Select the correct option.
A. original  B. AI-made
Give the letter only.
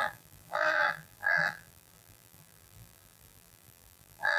B